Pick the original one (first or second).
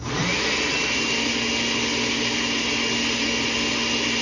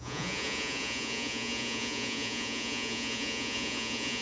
first